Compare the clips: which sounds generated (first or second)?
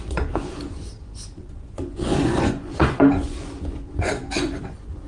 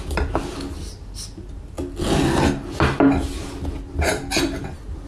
first